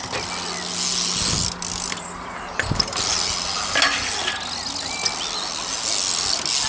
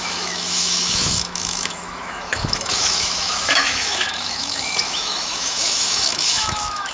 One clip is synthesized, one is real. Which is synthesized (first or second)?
second